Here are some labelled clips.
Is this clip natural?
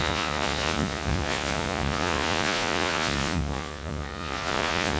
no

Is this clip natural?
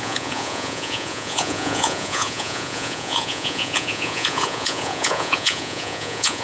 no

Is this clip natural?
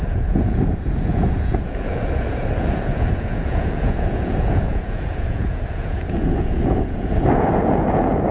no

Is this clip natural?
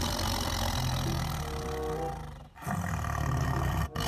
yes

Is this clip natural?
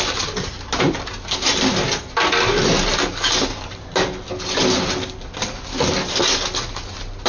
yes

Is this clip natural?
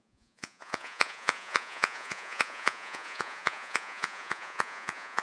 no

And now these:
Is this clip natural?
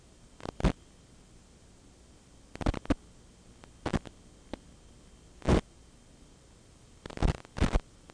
yes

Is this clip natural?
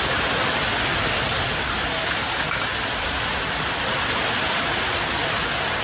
yes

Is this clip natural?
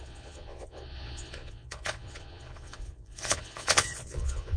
no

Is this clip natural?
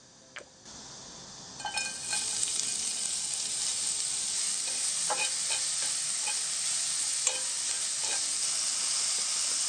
yes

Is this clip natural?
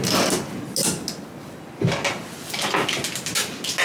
yes